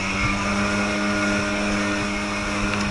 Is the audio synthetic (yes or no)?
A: no